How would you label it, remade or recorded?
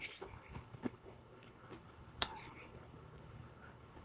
remade